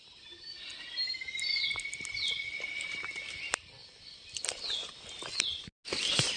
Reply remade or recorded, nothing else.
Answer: recorded